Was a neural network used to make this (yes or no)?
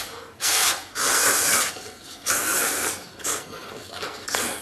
yes